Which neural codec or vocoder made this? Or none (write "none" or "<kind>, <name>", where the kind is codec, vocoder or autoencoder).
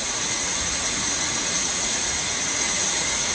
vocoder, Vocos